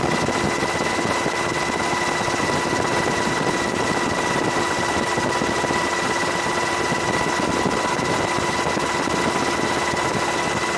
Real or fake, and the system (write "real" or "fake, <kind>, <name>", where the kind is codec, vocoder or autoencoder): real